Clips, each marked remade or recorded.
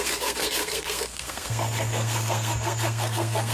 remade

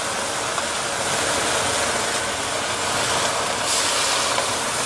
recorded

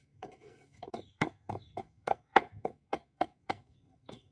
remade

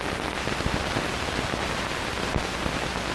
recorded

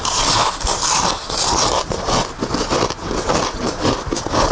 recorded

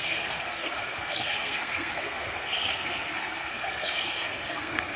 remade